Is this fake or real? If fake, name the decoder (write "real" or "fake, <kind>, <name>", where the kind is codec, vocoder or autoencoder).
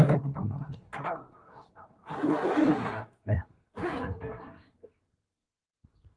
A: fake, codec, SNAC